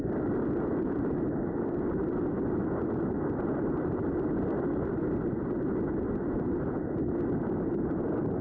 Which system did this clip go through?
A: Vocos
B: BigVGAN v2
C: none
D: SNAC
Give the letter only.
C